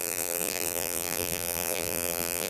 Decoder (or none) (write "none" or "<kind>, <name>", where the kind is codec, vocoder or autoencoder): vocoder, BigVGAN v2